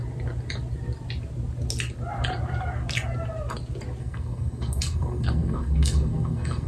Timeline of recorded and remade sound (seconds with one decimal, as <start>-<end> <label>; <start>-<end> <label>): 0.0-4.0 recorded; 4.0-6.7 remade

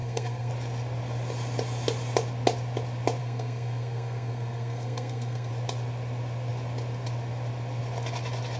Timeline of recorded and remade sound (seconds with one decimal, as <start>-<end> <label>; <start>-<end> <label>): 0.0-0.5 remade; 0.5-3.2 recorded; 3.2-5.5 remade; 5.5-8.6 recorded

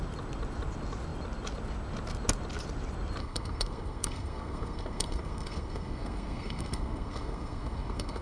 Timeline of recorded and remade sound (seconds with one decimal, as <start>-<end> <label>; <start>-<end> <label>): 0.0-3.2 recorded; 3.2-8.2 remade